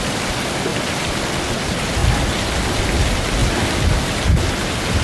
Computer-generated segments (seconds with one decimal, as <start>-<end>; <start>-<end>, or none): 0.0-2.0; 2.8-5.0